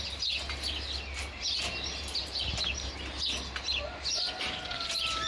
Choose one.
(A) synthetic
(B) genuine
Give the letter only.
B